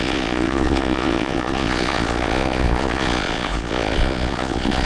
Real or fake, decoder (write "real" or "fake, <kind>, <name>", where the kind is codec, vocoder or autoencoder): fake, vocoder, Vocos